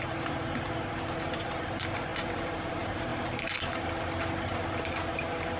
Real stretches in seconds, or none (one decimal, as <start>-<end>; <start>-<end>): 3.1-5.6

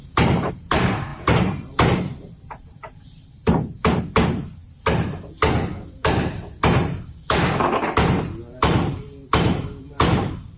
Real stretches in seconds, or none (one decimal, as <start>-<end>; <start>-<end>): 4.6-9.8

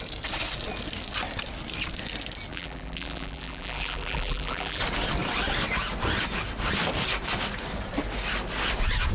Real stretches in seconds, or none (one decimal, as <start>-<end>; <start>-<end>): 0.0-2.5; 4.8-9.1

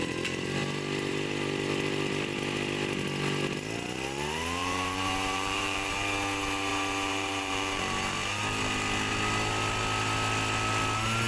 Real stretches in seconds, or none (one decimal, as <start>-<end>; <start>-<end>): 0.0-4.6; 5.9-6.7; 7.8-11.3

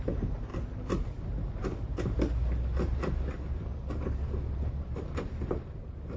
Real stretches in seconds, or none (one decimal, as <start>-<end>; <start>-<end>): 0.0-6.2